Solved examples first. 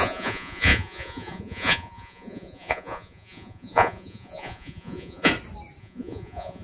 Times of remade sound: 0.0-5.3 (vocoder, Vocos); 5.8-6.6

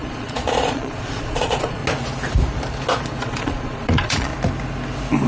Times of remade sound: 0.0-1.8 (vocoder, Vocos); 3.2-4.3

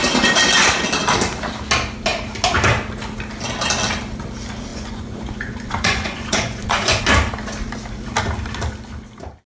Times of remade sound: 4.7-7.0 (vocoder, Vocos)

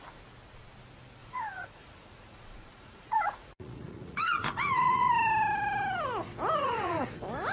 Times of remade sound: 1.2-5.1 (vocoder, Vocos); 6.6-7.1

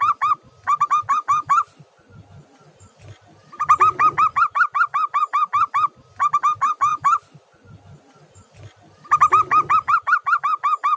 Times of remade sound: none

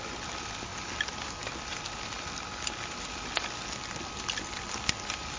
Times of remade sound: none

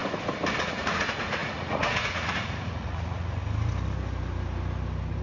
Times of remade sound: 0.6-3.4 (vocoder, Vocos)

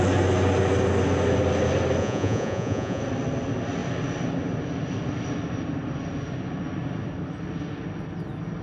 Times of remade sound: 2.0-3.0 (vocoder, Vocos)